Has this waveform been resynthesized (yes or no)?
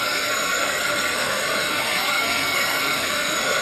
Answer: yes